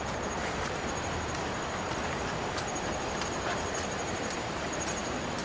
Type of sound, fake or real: fake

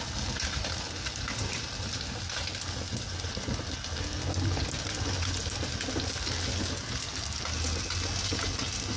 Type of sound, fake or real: real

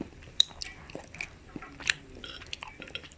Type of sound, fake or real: fake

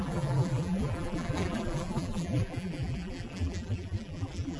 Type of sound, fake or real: fake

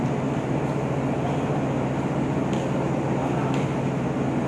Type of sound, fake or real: real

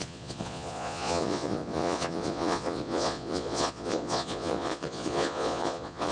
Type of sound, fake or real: fake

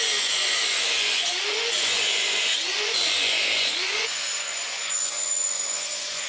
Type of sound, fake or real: fake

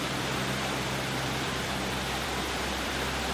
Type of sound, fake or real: fake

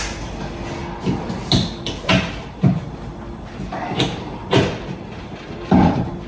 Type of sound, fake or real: real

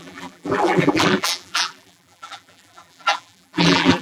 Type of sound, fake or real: fake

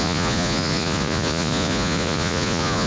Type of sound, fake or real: fake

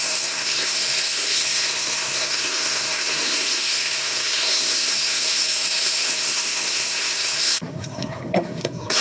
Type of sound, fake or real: fake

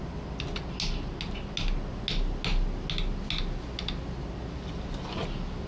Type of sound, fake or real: real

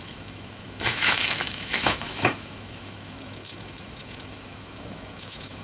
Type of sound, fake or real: fake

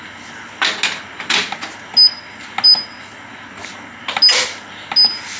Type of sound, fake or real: real